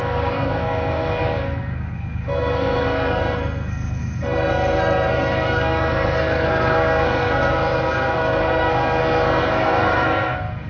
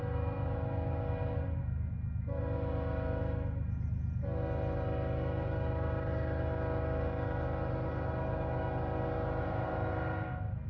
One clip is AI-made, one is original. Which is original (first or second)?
second